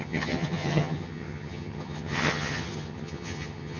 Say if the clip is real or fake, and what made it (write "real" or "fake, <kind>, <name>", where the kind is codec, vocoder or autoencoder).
fake, vocoder, HiFi-GAN